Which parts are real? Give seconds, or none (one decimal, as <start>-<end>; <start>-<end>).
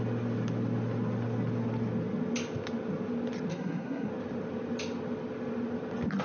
0.0-3.5; 4.1-6.2